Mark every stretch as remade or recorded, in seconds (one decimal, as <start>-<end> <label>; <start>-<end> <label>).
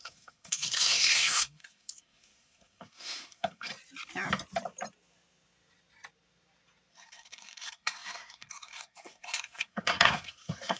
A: 0.0-3.7 remade; 3.7-6.9 recorded; 6.9-10.8 remade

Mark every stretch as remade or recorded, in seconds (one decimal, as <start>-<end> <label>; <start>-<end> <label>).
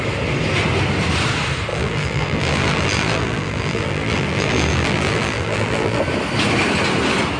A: 0.0-1.7 recorded; 1.7-6.0 remade; 6.0-7.4 recorded